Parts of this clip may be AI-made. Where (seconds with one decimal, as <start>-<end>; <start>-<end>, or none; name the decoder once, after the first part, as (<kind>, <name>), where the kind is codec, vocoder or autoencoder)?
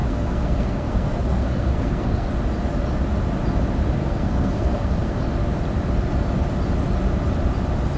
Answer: 0.0-2.3 (codec, SNAC); 4.0-5.2